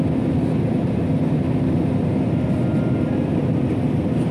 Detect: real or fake real